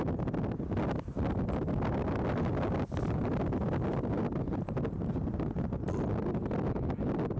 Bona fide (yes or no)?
yes